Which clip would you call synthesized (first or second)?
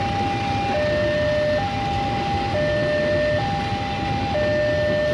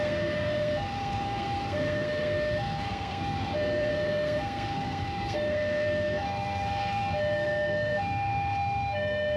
second